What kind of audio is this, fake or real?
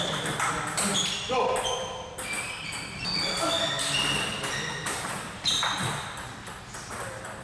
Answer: real